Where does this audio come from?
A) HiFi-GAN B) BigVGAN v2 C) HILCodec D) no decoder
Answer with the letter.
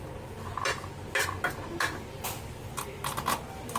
D